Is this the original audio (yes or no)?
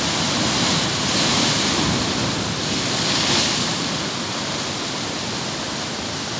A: yes